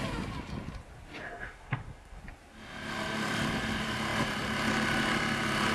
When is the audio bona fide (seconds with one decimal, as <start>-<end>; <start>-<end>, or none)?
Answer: 0.0-1.2; 2.2-5.7